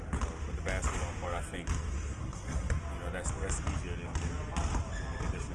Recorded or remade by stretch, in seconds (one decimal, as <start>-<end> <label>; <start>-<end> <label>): 0.0-1.9 recorded; 1.9-2.8 remade; 2.8-5.5 recorded